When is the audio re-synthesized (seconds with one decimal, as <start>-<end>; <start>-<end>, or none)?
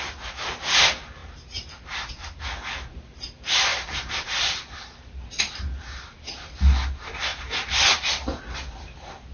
1.2-2.4; 3.7-5.4; 7.3-8.2